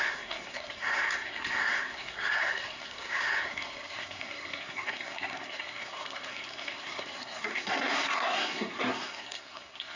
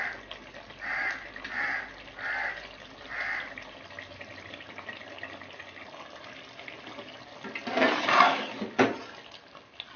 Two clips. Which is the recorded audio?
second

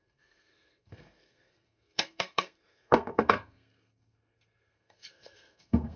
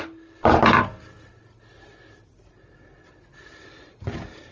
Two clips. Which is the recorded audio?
second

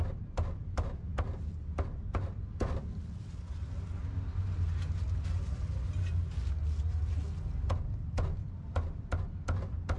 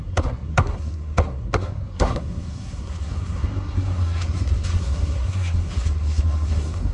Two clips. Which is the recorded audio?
first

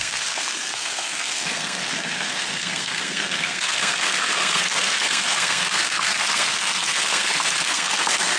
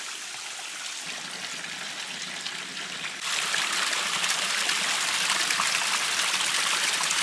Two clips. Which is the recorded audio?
second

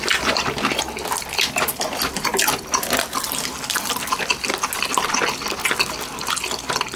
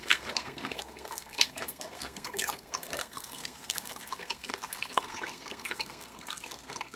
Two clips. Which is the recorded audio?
first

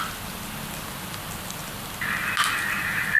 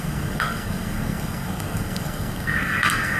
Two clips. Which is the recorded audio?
first